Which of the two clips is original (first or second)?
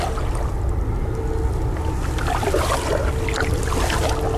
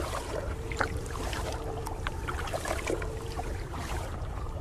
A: first